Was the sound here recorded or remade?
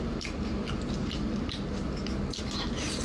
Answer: recorded